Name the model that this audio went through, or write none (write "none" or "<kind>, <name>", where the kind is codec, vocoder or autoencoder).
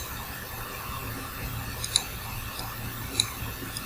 none